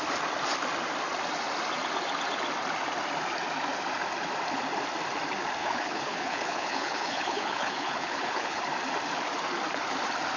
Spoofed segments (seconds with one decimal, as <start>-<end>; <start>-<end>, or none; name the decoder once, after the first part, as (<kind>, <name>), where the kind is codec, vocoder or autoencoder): 5.6-8.6 (codec, HILCodec)